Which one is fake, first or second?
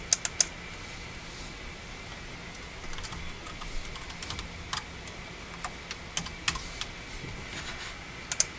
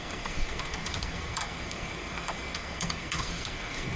second